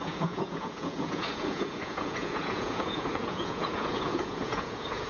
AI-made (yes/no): yes